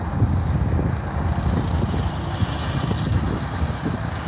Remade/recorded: recorded